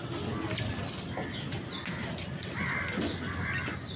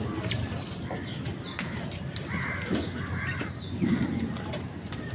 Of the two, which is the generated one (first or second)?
second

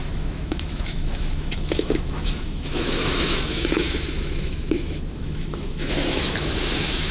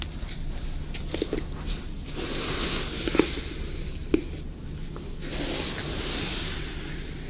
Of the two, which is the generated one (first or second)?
first